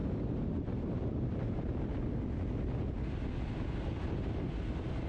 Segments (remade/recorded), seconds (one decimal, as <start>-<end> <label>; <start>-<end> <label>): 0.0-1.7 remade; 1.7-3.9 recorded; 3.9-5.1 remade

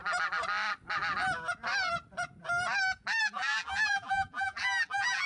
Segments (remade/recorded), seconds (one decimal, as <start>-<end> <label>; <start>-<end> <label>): 0.0-3.2 recorded; 3.2-5.3 remade

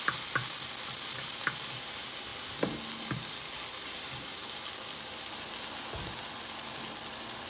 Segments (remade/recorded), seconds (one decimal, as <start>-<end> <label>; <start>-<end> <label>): 0.0-7.5 recorded